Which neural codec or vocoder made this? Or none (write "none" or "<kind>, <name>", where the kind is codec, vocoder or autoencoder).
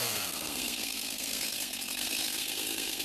codec, SNAC